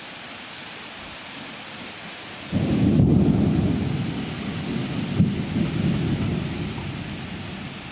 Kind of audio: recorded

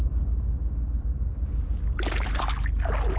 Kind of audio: recorded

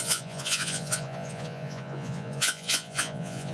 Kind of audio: remade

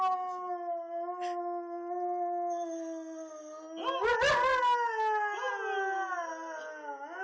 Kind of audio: recorded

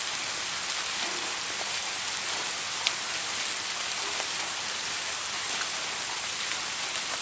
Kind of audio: recorded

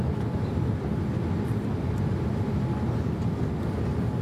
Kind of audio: recorded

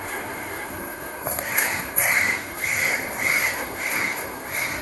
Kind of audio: remade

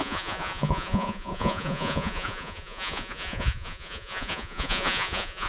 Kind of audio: remade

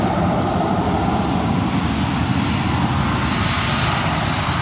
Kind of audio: recorded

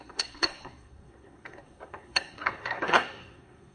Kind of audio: remade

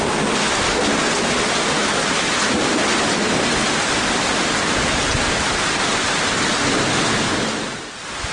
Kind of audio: recorded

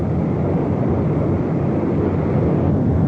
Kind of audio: recorded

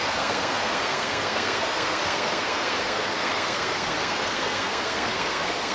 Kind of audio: remade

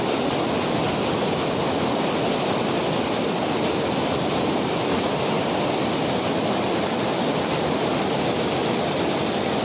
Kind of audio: recorded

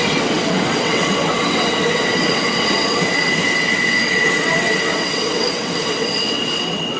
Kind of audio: remade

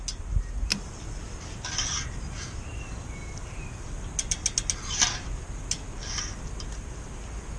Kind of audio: recorded